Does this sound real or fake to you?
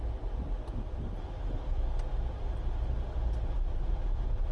real